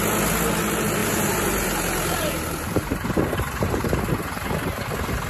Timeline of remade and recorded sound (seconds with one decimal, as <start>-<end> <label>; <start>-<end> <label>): 0.0-1.0 recorded; 1.0-4.0 remade; 4.0-5.3 recorded